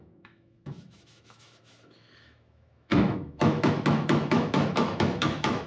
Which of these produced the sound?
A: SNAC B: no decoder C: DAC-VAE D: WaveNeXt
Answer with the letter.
C